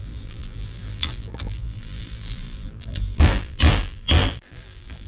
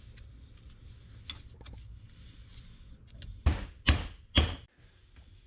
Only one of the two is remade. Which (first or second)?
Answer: first